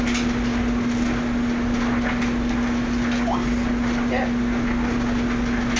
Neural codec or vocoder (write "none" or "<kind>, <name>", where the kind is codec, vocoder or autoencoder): none